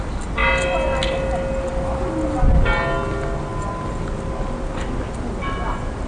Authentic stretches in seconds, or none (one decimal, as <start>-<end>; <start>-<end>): 0.0-6.1